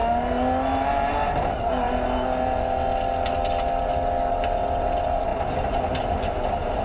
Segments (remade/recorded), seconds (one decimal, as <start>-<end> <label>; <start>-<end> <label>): 0.0-6.8 recorded